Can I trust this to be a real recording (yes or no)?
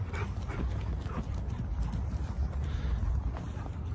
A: yes